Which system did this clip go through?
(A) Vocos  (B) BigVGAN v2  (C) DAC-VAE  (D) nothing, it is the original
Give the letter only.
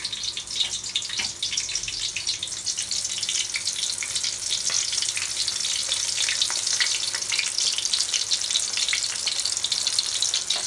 D